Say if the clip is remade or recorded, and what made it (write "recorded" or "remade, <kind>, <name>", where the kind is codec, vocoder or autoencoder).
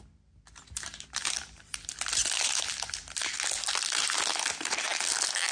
recorded